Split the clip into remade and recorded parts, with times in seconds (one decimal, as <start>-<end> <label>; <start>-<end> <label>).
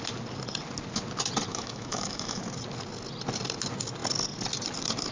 0.0-1.5 recorded; 1.5-2.4 remade; 2.4-5.1 recorded